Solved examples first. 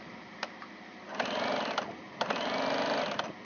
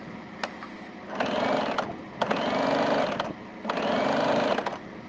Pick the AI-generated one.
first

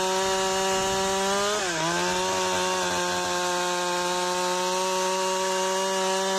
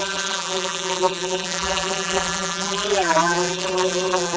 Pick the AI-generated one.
second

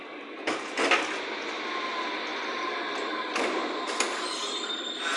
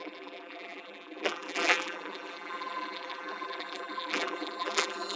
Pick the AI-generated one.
second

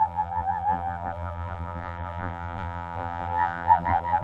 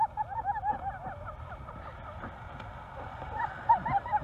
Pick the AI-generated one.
first